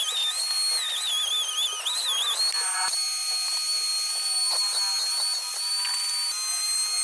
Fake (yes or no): no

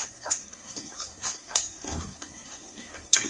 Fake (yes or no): yes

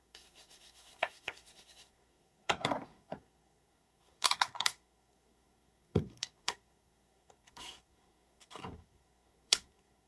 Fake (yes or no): yes